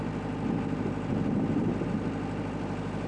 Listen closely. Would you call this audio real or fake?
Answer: real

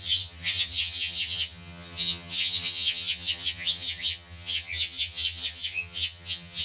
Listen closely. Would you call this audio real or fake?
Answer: fake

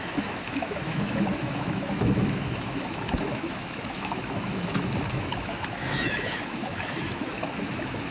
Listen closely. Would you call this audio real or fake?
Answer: fake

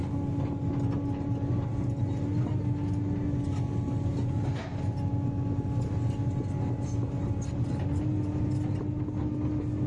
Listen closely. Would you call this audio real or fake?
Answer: real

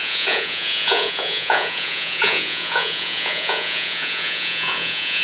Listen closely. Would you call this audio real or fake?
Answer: fake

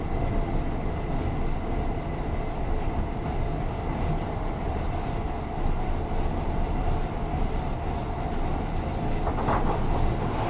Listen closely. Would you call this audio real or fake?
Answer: real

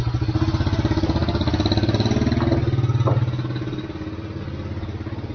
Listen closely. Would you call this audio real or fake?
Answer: real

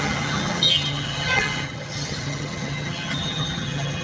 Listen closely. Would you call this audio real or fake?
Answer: fake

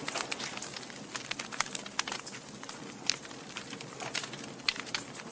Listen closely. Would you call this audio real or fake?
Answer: real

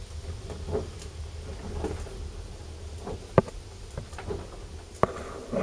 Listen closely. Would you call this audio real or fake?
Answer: real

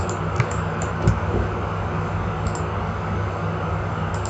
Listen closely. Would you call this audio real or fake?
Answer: fake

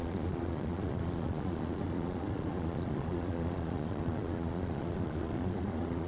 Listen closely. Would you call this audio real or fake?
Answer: fake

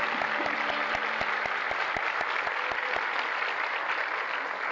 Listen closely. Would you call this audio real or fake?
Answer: real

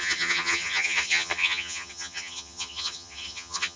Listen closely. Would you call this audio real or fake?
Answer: fake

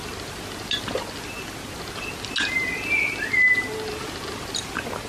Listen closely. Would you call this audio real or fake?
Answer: real